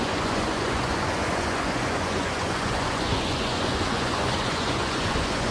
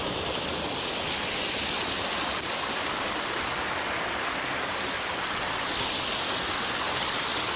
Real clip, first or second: second